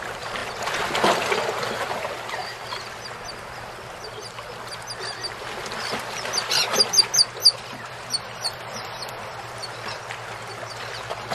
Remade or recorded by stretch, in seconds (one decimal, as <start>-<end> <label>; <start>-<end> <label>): 0.0-7.4 recorded; 7.4-10.0 remade; 10.0-11.3 recorded